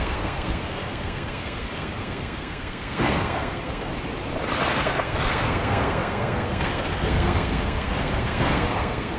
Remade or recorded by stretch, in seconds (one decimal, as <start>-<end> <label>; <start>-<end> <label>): 0.0-3.9 remade; 3.9-4.7 recorded; 4.7-9.2 remade